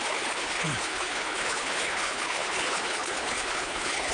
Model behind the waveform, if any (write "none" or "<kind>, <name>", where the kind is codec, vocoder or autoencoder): codec, HILCodec